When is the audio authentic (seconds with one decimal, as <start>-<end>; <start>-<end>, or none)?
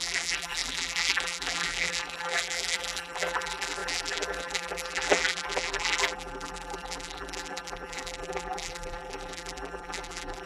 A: none